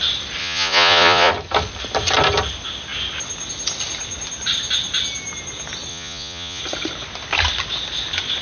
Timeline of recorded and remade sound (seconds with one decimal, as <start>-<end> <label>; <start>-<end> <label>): 0.0-0.4 recorded; 0.4-1.3 remade; 1.3-5.9 recorded; 5.9-6.6 remade; 6.6-8.4 recorded